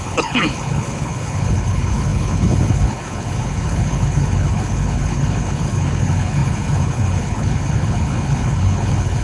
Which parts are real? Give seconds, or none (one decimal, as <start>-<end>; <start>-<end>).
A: none